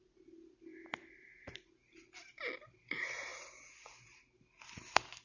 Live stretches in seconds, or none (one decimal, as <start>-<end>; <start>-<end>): 0.0-0.7; 1.7-5.2